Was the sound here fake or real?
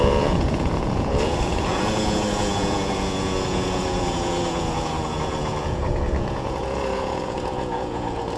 fake